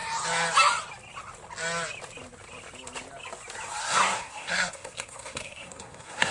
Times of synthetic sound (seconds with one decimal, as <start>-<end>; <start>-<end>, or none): 3.8-6.3